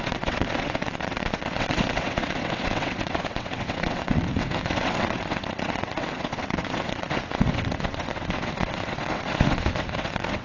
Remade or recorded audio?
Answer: remade